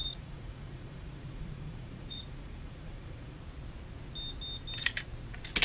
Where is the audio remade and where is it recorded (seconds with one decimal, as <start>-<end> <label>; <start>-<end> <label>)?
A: 0.0-3.4 remade; 3.4-5.6 recorded